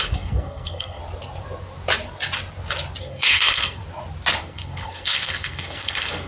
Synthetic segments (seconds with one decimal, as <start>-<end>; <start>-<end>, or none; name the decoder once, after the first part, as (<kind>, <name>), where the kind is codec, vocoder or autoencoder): 0.0-1.0 (codec, SNAC); 3.0-3.8; 4.4-6.3